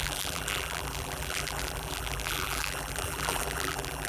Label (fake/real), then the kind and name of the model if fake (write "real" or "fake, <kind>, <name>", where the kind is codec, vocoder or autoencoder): fake, vocoder, BigVGAN v2